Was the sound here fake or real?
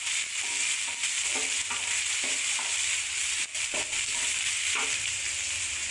real